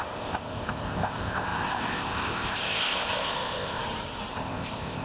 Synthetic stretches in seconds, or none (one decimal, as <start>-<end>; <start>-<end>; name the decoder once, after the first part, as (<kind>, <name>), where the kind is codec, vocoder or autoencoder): 0.0-3.8 (codec, ZipCodec); 4.3-5.0